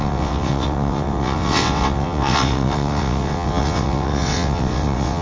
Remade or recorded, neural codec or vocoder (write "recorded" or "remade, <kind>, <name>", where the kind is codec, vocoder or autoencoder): remade, vocoder, WaveNeXt